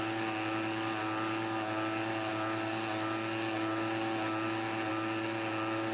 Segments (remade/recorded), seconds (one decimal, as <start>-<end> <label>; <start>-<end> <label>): 0.0-5.9 recorded